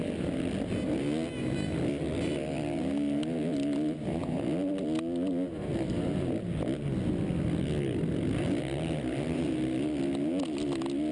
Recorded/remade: recorded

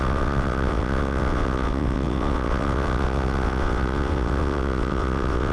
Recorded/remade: remade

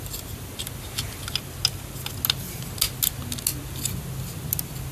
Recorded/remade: recorded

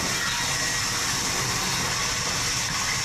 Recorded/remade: recorded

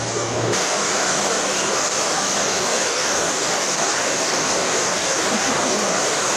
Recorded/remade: remade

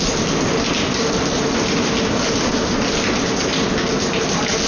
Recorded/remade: recorded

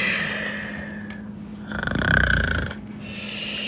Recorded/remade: recorded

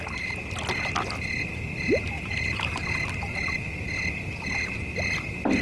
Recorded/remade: recorded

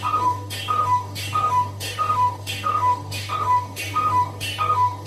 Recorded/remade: remade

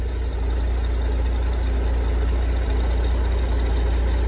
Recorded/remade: recorded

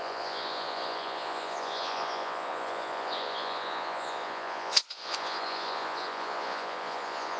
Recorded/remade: remade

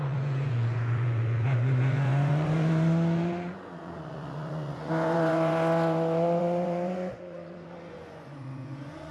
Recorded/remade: remade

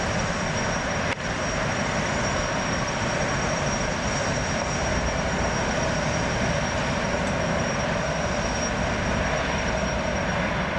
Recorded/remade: remade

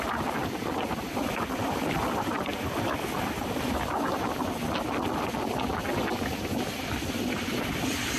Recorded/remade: recorded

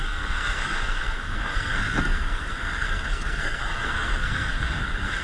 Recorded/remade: remade